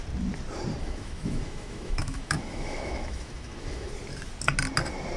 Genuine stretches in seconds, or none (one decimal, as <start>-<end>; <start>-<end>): 0.0-0.8; 3.9-5.2